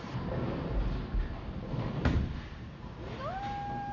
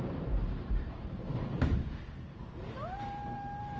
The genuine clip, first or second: first